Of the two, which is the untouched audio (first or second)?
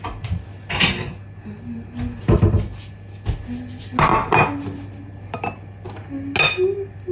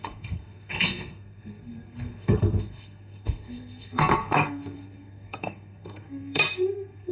first